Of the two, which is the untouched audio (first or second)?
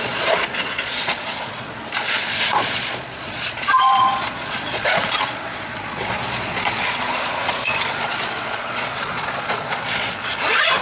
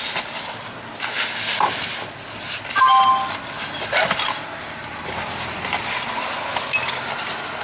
second